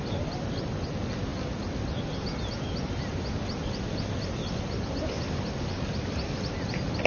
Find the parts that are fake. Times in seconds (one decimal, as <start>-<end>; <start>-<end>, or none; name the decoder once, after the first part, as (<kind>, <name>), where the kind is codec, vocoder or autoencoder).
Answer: none